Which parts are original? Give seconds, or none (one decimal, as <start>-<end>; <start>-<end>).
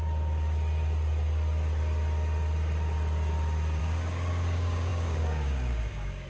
0.0-3.8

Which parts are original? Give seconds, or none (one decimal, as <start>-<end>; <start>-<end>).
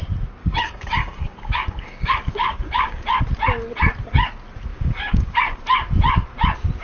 0.0-0.4; 3.2-4.7; 5.6-6.8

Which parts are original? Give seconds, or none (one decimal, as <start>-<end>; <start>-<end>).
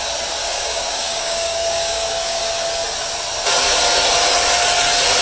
0.0-0.4; 2.4-5.2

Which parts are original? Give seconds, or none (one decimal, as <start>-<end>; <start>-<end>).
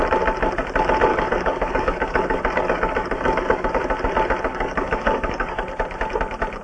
0.0-1.1; 3.7-4.5; 5.6-6.6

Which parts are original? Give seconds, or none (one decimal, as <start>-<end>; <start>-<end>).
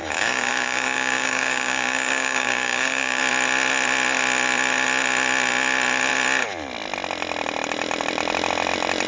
3.2-9.1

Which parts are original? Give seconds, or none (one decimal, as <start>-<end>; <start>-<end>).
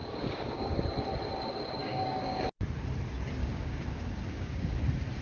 0.7-1.9; 2.5-3.4; 4.7-5.2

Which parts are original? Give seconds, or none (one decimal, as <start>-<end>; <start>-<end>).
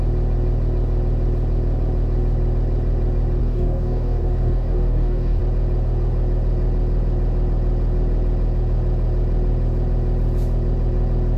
0.0-3.4; 5.4-11.4